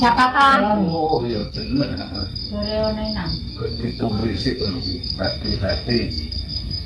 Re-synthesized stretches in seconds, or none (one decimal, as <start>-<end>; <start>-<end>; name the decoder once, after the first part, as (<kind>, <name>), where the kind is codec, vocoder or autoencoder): 0.0-2.4 (codec, SNAC); 3.5-6.9

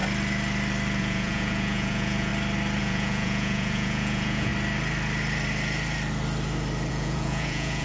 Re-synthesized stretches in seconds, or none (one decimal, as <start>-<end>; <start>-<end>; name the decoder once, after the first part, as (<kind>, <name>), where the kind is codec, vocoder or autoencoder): 1.0-2.3 (vocoder, Vocos); 2.8-4.5; 6.9-7.8